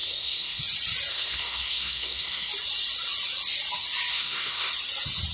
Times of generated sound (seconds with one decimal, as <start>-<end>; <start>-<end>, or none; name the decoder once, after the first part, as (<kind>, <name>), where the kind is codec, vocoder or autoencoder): 0.0-0.6 (codec, SNAC); 1.1-2.5; 4.1-4.7